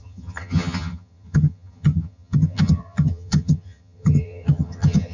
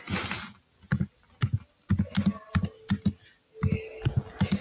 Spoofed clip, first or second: first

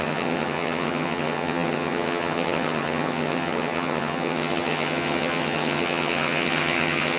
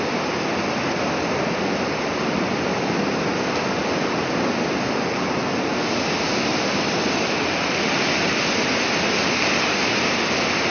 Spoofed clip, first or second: first